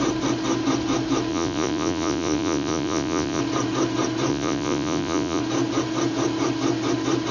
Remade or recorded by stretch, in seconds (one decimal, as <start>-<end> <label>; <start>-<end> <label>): 0.0-1.3 recorded; 1.3-3.4 remade; 3.4-4.3 recorded; 4.3-5.4 remade; 5.4-7.3 recorded